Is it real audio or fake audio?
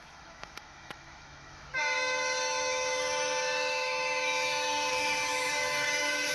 fake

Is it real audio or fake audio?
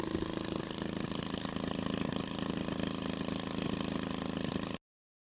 real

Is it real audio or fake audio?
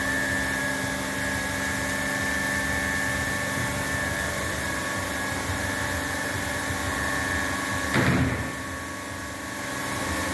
real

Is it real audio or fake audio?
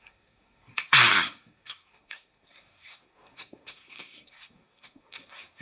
fake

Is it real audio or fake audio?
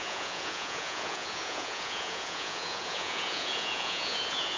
fake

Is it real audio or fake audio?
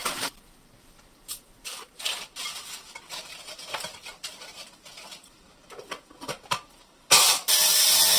fake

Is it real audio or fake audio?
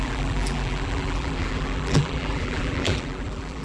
fake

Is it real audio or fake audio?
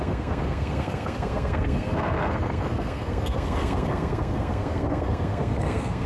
fake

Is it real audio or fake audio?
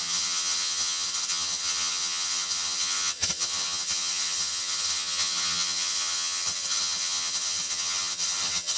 fake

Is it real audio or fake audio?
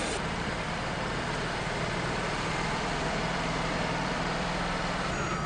fake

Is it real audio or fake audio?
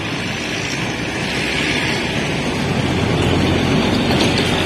real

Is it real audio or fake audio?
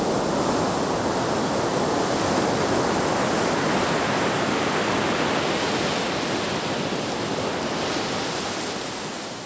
real